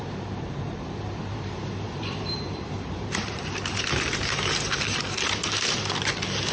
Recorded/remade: remade